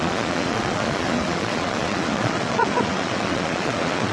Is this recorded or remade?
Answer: remade